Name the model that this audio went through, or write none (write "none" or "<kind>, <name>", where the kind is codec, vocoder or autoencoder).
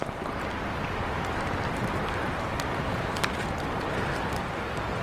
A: none